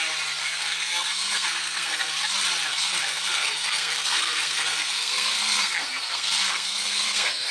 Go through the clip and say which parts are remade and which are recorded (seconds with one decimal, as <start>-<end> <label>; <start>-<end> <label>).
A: 0.0-0.4 recorded; 0.4-2.3 remade; 2.3-2.7 recorded; 2.7-7.5 remade